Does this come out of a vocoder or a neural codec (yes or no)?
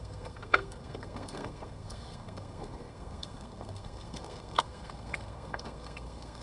yes